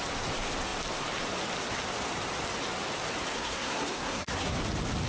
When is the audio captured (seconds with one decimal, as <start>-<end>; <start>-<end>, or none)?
0.0-3.3; 4.6-5.1